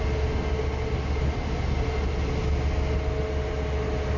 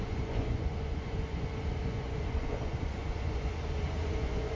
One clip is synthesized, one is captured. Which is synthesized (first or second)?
second